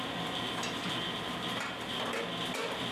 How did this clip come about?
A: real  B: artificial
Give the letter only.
A